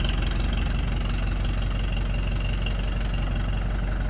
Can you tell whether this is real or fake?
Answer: real